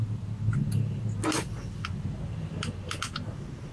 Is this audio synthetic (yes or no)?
yes